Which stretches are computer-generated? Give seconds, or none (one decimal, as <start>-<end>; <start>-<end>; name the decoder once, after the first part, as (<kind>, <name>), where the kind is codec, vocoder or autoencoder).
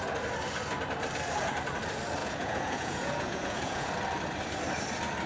2.2-3.9 (vocoder, Vocos)